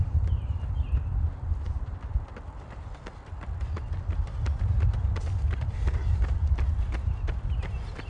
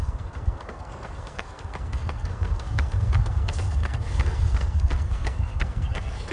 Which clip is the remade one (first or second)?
second